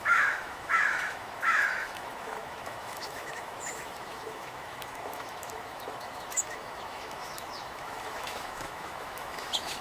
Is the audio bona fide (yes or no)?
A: no